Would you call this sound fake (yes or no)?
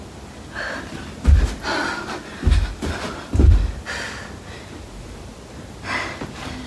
no